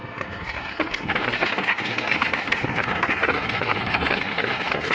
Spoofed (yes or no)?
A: yes